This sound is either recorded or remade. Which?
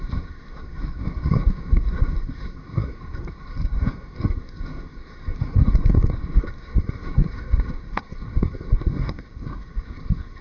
remade